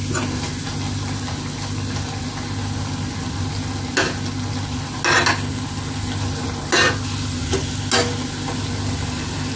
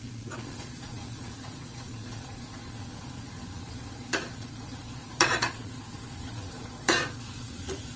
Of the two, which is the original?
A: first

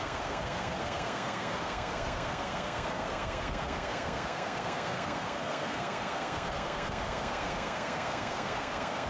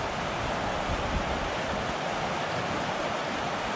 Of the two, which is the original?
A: second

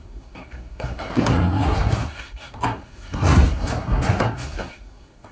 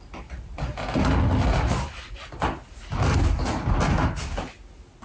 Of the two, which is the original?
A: second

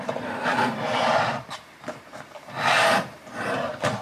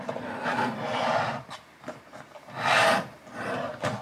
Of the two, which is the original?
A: second